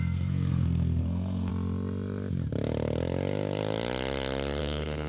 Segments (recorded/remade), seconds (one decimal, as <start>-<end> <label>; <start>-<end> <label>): 0.0-1.5 remade; 1.5-4.6 recorded; 4.6-5.1 remade